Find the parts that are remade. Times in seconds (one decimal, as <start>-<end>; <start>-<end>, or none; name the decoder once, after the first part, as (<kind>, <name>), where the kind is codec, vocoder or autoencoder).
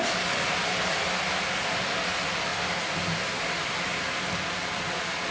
none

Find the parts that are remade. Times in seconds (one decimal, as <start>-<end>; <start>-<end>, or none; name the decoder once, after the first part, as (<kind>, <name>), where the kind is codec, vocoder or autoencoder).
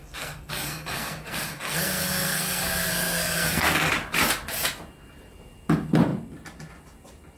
0.0-3.9 (codec, SNAC)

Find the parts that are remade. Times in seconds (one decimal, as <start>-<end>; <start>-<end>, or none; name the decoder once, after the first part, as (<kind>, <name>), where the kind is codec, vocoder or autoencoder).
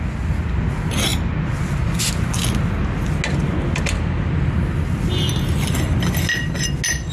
none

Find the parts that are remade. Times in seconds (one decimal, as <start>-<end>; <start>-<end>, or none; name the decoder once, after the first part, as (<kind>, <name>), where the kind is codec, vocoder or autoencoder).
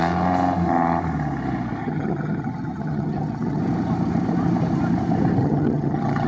1.8-3.6 (vocoder, HiFi-GAN); 5.4-6.3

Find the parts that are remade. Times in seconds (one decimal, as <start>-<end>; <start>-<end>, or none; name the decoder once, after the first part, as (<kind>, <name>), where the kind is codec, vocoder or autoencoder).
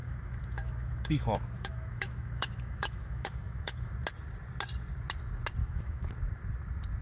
0.0-3.9 (autoencoder, DAC-VAE); 5.6-6.1